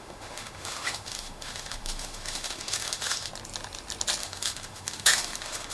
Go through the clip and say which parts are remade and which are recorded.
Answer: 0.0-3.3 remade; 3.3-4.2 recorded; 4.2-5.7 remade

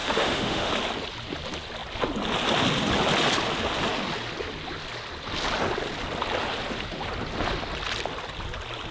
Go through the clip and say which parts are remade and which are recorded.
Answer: 0.0-0.7 remade; 0.7-8.9 recorded

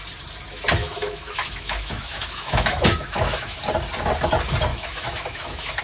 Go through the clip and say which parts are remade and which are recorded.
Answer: 0.0-0.8 recorded; 0.8-3.6 remade; 3.6-4.7 recorded; 4.7-5.8 remade

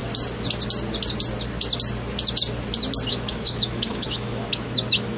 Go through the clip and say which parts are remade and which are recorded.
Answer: 0.0-3.1 recorded; 3.1-5.2 remade